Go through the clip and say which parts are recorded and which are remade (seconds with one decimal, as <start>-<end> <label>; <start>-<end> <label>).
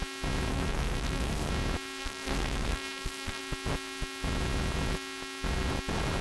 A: 0.0-0.5 recorded; 0.5-1.5 remade; 1.5-2.0 recorded; 2.0-3.4 remade; 3.4-6.2 recorded